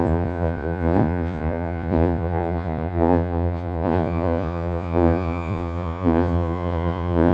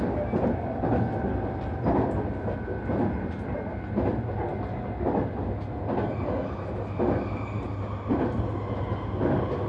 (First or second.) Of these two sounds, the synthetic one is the first